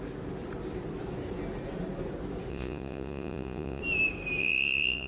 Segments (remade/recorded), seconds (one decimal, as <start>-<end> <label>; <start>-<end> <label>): 0.0-2.5 recorded; 2.5-3.8 remade; 3.8-4.4 recorded; 4.4-5.1 remade